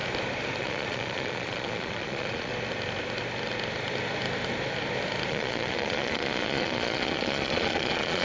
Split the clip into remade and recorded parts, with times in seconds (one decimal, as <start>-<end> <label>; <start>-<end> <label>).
0.0-0.6 recorded; 0.6-2.5 remade; 2.5-5.3 recorded; 5.3-8.2 remade